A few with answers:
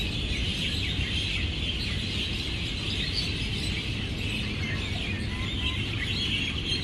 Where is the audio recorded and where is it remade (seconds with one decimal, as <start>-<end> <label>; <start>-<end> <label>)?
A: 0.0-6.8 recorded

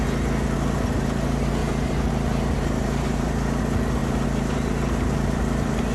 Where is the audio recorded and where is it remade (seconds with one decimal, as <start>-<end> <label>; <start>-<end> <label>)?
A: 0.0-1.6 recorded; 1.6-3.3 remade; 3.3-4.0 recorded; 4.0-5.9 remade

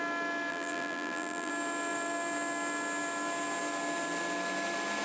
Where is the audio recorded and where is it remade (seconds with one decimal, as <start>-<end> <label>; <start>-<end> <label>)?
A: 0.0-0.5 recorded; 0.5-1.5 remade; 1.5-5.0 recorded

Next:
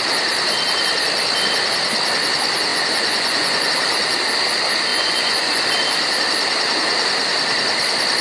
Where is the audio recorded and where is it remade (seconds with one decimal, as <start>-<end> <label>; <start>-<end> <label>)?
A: 0.0-2.7 recorded; 2.7-3.7 remade; 3.7-4.9 recorded; 4.9-5.6 remade; 5.6-8.2 recorded

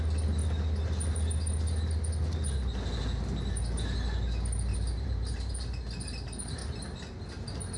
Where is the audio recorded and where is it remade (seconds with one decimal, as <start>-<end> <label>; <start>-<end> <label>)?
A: 0.0-4.7 recorded; 4.7-5.6 remade; 5.6-7.8 recorded

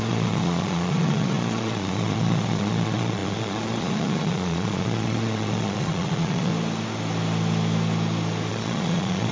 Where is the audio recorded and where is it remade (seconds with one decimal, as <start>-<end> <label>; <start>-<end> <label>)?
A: 0.0-6.5 remade; 6.5-8.5 recorded; 8.5-9.3 remade

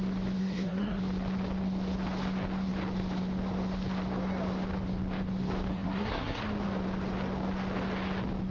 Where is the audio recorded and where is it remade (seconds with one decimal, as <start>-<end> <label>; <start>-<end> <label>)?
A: 0.0-0.4 recorded; 0.4-1.0 remade; 1.0-5.7 recorded; 5.7-6.4 remade; 6.4-8.5 recorded

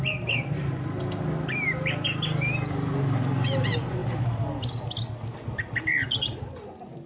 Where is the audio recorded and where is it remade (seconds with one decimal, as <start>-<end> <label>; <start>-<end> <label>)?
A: 0.0-7.1 recorded